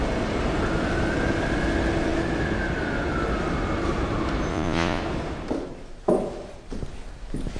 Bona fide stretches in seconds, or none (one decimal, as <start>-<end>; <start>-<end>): 0.0-4.5; 5.0-7.6